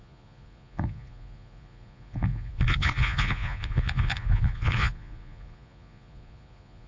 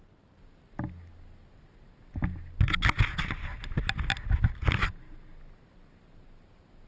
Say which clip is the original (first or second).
second